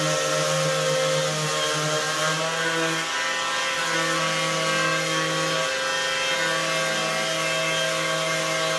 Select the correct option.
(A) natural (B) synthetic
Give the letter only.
A